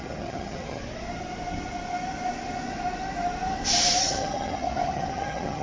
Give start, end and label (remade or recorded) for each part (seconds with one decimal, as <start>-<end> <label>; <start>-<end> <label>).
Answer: 0.0-0.8 remade; 0.8-4.0 recorded; 4.0-5.6 remade